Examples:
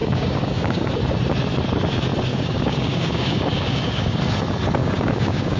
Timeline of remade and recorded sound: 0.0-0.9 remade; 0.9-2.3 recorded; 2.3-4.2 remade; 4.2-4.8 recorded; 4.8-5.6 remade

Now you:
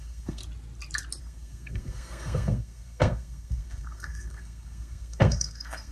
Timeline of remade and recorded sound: 0.0-0.4 remade; 0.4-1.2 recorded; 1.2-5.9 remade

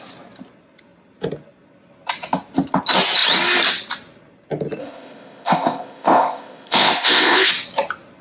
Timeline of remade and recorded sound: 0.0-4.8 recorded; 4.8-7.5 remade; 7.5-8.2 recorded

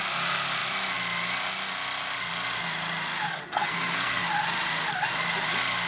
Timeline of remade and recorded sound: 0.0-3.3 recorded; 3.3-4.2 remade; 4.2-5.9 recorded